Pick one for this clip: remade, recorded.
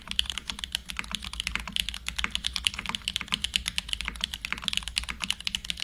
recorded